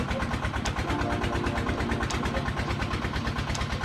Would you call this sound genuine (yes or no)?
yes